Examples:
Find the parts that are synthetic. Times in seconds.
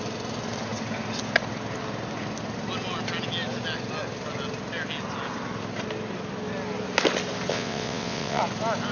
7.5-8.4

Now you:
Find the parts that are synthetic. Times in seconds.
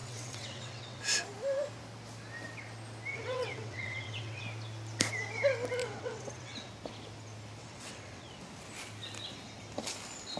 0.0-1.0; 3.1-4.4; 5.8-6.7; 7.6-8.4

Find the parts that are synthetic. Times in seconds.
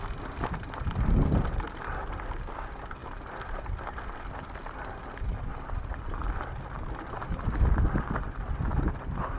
none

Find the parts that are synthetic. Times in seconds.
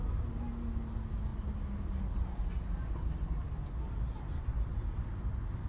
none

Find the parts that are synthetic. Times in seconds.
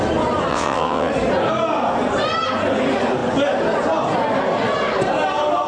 0.5-1.1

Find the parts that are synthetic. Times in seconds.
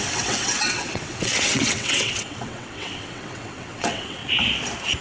0.0-4.2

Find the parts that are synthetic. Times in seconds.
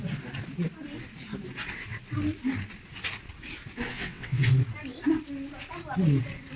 3.9-4.5